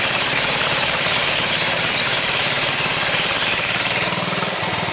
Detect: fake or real fake